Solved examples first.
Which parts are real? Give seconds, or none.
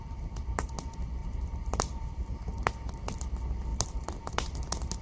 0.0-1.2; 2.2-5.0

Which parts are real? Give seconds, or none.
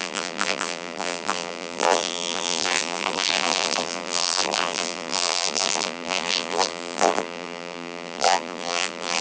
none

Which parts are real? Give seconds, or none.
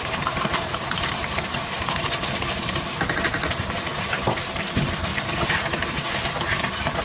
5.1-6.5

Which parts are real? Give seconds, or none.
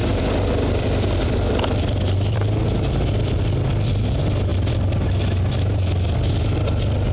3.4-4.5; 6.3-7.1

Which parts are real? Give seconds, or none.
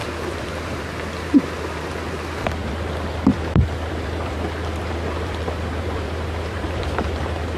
none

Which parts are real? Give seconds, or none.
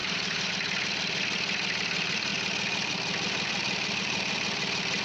0.5-5.0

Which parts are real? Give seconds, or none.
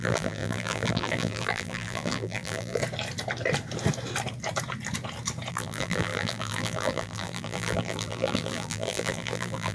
2.8-5.5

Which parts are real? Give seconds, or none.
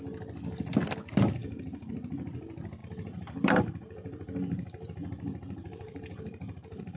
0.0-1.4; 1.9-2.8